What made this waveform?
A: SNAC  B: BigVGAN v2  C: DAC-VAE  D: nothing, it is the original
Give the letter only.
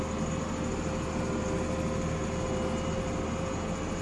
D